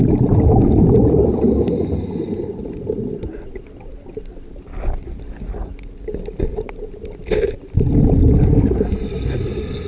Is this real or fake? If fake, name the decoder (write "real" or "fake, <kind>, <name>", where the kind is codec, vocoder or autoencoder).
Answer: real